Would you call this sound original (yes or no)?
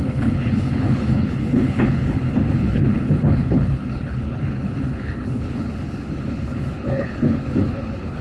no